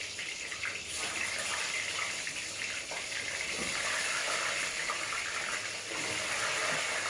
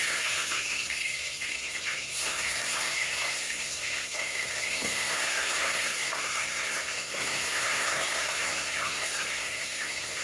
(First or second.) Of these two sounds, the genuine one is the first